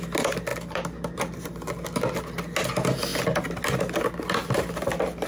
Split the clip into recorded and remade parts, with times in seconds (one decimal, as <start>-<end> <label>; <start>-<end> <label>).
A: 0.0-0.5 recorded; 0.5-1.7 remade; 1.7-5.3 recorded